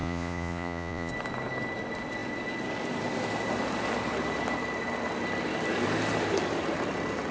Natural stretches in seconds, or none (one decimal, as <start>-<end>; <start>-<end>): 1.1-7.3